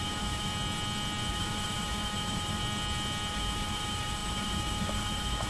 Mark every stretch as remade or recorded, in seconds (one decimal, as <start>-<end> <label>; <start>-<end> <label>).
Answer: 0.0-0.5 remade; 0.5-1.3 recorded; 1.3-2.6 remade; 2.6-3.3 recorded; 3.3-5.5 remade